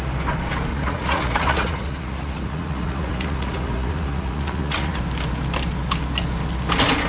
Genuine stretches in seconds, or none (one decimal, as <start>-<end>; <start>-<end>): 0.0-0.7; 5.0-7.1